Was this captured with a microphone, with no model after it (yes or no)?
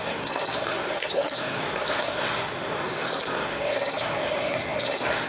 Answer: no